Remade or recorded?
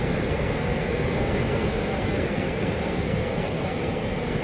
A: remade